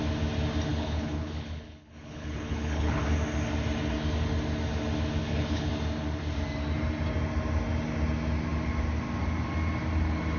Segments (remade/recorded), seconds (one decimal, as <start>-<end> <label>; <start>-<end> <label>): 0.0-0.7 recorded; 0.7-3.0 remade; 3.0-5.2 recorded; 5.2-5.7 remade; 5.7-10.4 recorded